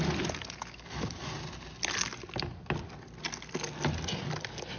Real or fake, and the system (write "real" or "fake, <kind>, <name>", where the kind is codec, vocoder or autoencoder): real